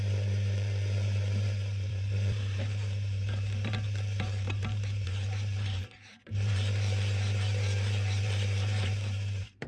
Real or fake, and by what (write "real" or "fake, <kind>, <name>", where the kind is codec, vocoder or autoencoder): fake, vocoder, BigVGAN v2